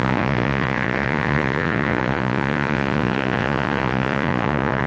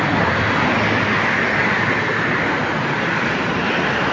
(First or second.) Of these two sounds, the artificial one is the first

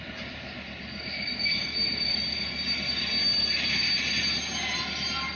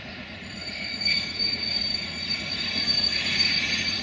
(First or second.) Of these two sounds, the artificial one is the second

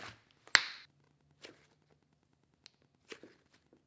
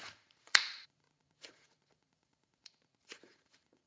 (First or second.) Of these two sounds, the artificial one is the second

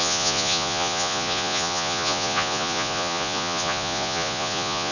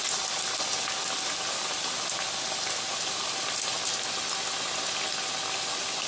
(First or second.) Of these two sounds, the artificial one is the first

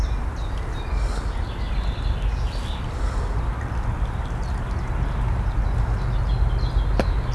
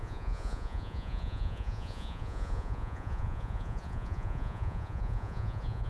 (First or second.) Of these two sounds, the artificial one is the second